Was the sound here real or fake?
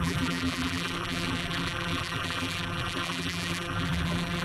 fake